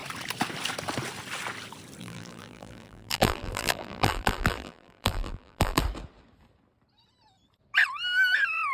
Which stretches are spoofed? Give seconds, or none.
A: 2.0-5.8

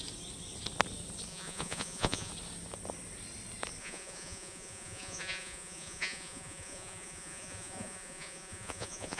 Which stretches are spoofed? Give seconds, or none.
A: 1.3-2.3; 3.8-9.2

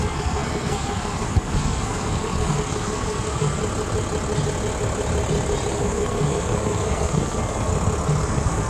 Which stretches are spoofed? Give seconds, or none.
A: 0.0-3.6; 5.7-7.7; 8.2-8.7

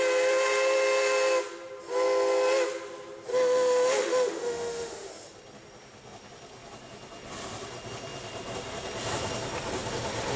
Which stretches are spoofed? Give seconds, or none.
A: 3.3-5.1